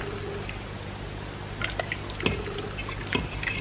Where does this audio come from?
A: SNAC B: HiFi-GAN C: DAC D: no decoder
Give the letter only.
D